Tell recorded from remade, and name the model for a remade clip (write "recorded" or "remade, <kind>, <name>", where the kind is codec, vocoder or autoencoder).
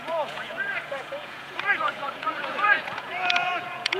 remade, vocoder, Vocos